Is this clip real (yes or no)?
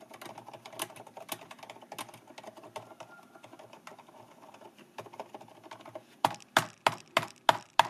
yes